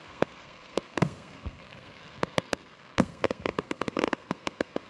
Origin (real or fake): fake